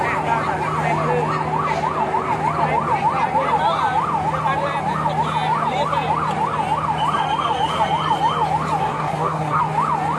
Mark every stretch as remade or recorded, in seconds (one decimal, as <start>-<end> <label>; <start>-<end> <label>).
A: 0.0-8.8 recorded; 8.8-9.6 remade; 9.6-10.2 recorded